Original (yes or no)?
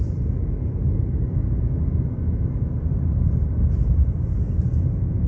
yes